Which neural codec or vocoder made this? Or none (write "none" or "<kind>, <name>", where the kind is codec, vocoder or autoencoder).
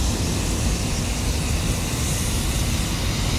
none